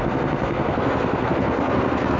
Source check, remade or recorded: remade